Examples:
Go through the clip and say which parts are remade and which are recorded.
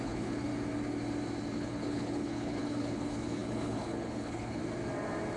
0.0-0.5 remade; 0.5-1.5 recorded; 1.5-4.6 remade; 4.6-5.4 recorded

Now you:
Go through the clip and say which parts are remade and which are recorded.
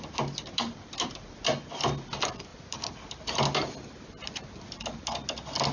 0.0-5.7 recorded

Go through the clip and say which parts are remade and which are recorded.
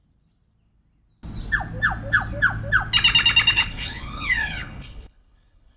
0.0-3.5 recorded; 3.5-5.8 remade